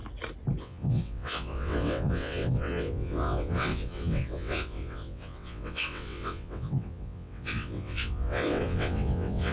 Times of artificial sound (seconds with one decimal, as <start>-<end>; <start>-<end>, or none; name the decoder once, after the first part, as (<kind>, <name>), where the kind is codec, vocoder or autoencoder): 0.6-9.5 (vocoder, WaveNeXt)

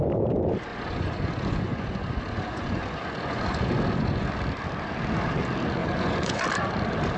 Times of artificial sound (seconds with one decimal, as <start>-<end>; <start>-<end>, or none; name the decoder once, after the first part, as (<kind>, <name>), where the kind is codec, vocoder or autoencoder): 0.7-4.3 (vocoder, Vocos); 5.8-6.4